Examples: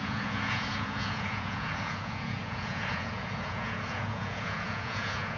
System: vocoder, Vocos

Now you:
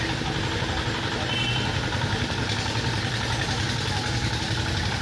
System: none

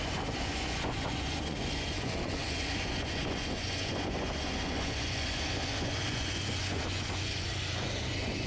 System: vocoder, Vocos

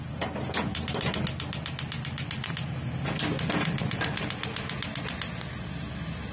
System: none